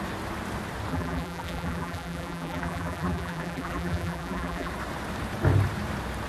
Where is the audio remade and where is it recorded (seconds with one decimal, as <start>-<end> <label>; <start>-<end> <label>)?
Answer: 0.0-0.9 recorded; 0.9-4.7 remade; 4.7-6.3 recorded